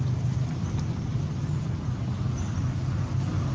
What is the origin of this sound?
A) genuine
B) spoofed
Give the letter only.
A